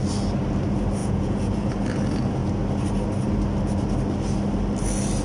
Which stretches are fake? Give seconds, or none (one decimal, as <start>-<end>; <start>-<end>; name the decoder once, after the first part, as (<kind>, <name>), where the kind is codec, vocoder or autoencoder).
1.0-1.7 (vocoder, Vocos)